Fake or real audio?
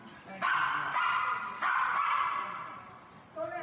real